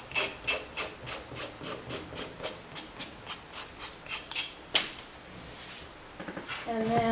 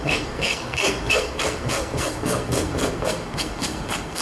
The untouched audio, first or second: first